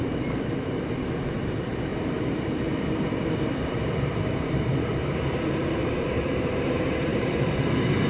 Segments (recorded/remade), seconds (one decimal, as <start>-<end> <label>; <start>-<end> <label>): 0.0-8.1 remade